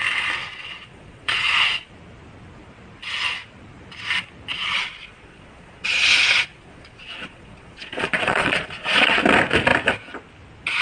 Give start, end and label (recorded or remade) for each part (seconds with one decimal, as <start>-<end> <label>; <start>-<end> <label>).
0.0-0.4 recorded; 0.4-1.9 remade; 1.9-4.5 recorded; 4.5-6.0 remade; 6.0-6.5 recorded; 6.5-9.2 remade; 9.2-10.8 recorded

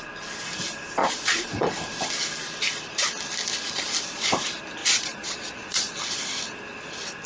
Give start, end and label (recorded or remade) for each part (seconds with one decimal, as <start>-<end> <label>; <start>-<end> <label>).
0.0-1.0 recorded; 1.0-1.7 remade; 1.7-4.8 recorded; 4.8-5.9 remade; 5.9-7.3 recorded

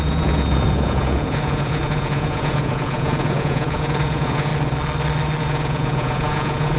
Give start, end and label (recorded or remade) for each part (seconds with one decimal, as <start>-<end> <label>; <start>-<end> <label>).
0.0-4.5 remade; 4.5-5.4 recorded; 5.4-6.8 remade

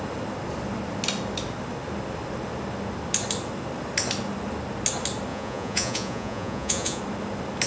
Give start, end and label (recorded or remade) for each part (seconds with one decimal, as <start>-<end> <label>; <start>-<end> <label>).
0.0-5.3 recorded; 5.3-7.0 remade; 7.0-7.7 recorded

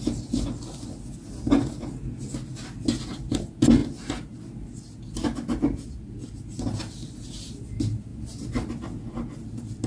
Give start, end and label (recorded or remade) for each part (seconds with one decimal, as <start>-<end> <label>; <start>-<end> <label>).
0.0-9.9 recorded